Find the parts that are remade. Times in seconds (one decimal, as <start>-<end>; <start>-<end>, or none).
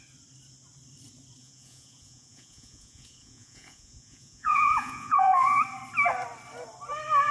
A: 1.4-5.6